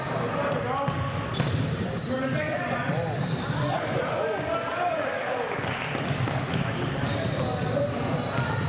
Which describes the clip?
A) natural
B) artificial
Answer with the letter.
A